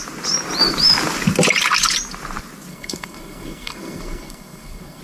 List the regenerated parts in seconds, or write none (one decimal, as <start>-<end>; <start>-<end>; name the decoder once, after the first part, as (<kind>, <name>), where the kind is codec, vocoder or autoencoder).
2.7-5.0 (codec, SNAC)